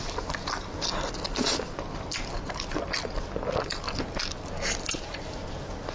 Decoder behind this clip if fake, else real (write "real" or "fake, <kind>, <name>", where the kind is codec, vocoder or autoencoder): real